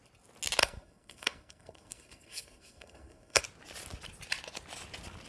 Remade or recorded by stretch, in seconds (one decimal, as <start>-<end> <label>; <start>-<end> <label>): 0.0-0.6 recorded; 0.6-3.4 remade; 3.4-5.3 recorded